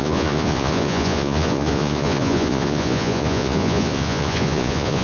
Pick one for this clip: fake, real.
fake